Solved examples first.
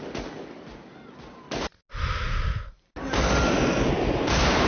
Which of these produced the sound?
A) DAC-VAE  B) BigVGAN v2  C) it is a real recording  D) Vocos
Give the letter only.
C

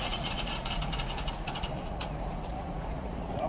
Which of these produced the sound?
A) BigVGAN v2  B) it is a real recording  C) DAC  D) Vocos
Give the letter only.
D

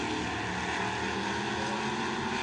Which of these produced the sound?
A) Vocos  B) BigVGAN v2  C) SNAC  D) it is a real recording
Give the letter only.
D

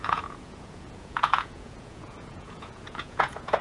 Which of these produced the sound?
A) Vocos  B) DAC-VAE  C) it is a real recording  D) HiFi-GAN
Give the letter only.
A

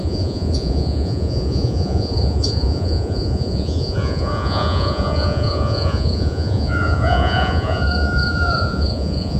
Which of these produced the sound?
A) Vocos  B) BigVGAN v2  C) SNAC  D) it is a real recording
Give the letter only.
A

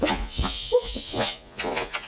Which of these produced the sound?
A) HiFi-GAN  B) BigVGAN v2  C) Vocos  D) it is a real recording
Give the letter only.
C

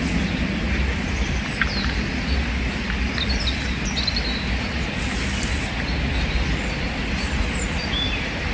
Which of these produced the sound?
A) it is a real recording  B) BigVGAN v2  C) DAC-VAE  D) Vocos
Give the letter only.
A